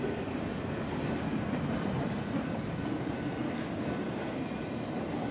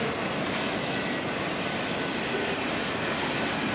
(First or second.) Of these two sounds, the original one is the second